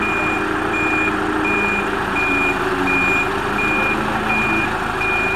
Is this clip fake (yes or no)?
no